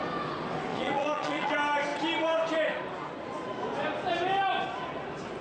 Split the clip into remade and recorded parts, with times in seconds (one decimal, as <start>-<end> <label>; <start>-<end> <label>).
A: 0.0-0.7 recorded; 0.7-1.5 remade; 1.5-5.4 recorded